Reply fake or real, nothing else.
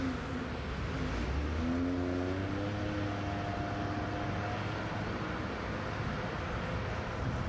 real